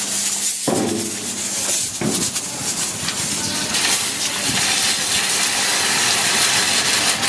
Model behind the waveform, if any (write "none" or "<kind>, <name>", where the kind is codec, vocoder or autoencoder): none